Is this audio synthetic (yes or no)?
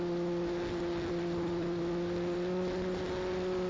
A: no